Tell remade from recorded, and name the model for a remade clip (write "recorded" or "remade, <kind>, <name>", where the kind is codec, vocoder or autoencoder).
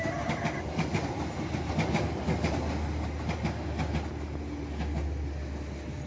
recorded